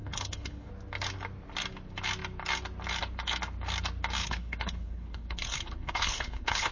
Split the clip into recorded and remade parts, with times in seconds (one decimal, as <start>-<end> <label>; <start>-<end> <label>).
0.0-0.7 remade; 0.7-4.2 recorded; 4.2-6.7 remade